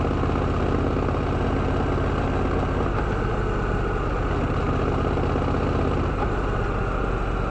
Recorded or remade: recorded